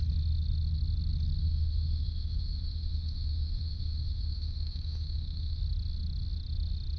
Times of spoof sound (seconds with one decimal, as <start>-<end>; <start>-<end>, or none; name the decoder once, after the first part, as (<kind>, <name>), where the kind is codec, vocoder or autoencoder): 1.4-5.6 (autoencoder, DAC-VAE)